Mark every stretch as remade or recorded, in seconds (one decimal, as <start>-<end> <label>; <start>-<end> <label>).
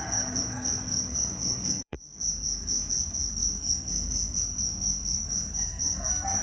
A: 0.0-6.4 remade